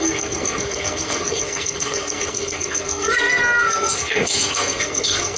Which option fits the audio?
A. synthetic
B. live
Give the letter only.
A